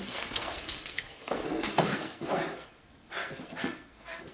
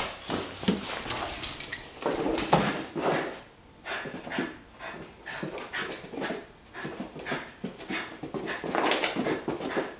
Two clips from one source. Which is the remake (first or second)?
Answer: first